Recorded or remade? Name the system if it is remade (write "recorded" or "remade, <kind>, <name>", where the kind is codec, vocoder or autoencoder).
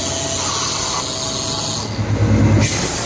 recorded